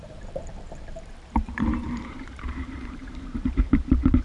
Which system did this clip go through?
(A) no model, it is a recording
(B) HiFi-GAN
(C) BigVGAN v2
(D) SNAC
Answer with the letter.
C